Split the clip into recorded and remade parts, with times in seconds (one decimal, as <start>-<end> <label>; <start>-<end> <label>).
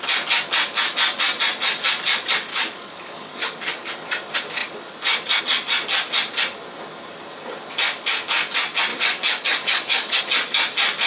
0.0-2.5 recorded; 2.5-3.9 remade; 3.9-8.9 recorded; 8.9-10.2 remade; 10.2-11.1 recorded